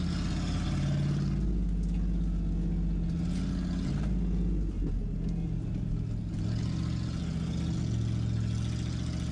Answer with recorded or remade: recorded